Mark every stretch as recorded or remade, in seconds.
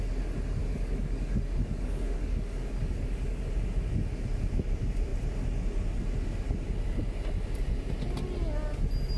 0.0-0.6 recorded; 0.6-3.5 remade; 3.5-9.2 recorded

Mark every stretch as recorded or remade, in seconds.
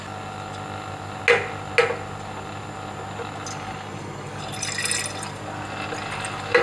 0.0-3.5 recorded; 3.5-4.4 remade; 4.4-6.6 recorded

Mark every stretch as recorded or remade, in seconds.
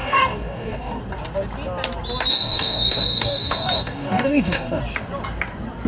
0.0-1.0 remade; 1.0-2.3 recorded; 2.3-4.8 remade; 4.8-5.9 recorded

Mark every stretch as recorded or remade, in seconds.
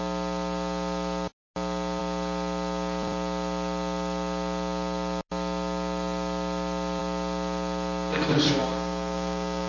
0.0-8.6 recorded; 8.6-9.7 remade